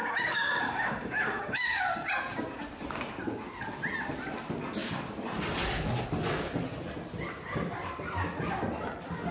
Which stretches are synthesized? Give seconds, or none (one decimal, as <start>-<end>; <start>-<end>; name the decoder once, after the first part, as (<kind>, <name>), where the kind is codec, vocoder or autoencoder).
0.0-2.1 (codec, DAC)